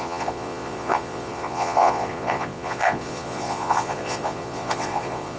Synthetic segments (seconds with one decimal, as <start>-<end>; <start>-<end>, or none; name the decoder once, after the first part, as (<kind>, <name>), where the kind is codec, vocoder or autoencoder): 0.0-5.4 (vocoder, Vocos)